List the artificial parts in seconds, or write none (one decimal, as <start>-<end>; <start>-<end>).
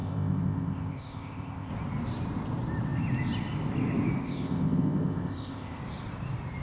0.0-1.7; 4.2-5.8